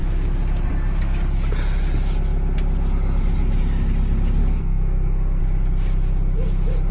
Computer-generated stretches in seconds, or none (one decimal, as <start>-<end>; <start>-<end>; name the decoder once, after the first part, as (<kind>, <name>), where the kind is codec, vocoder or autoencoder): 4.4-5.4 (codec, SNAC)